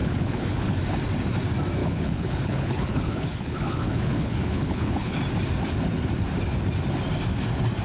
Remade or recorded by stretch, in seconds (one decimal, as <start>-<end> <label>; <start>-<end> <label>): 0.0-0.8 remade; 0.8-1.8 recorded; 1.8-5.2 remade; 5.2-7.8 recorded

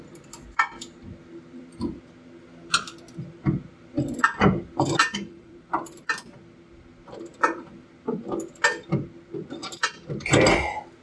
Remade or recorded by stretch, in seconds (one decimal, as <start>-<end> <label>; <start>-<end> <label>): 0.0-5.0 recorded; 5.0-6.0 remade; 6.0-7.3 recorded; 7.3-7.9 remade; 7.9-11.0 recorded

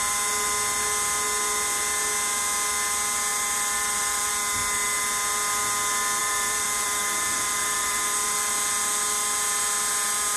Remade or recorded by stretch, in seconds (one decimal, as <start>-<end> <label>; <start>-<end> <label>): 0.0-3.3 recorded; 3.3-4.3 remade; 4.3-6.2 recorded; 6.2-8.5 remade; 8.5-10.4 recorded

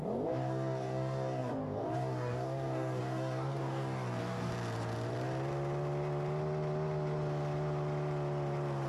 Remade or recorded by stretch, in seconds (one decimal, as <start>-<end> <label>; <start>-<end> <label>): 0.0-4.5 remade; 4.5-8.9 recorded

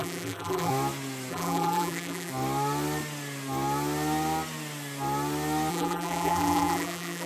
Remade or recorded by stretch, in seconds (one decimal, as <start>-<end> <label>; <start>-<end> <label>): 0.0-0.7 remade; 0.7-1.3 recorded; 1.3-2.3 remade; 2.3-5.7 recorded; 5.7-7.3 remade

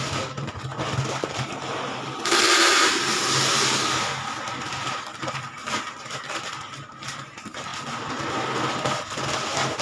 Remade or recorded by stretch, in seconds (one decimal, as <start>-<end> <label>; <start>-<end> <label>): 0.0-9.8 recorded

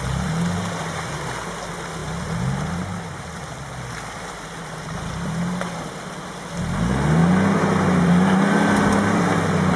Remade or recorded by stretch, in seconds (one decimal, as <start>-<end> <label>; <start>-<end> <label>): 0.0-9.8 recorded